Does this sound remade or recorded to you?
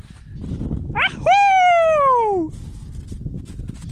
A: recorded